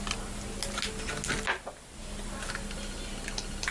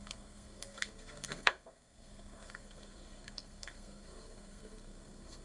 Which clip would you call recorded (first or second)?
first